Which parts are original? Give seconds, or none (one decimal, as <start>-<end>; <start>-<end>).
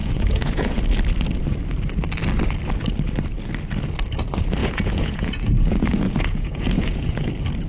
0.8-4.6; 7.3-7.7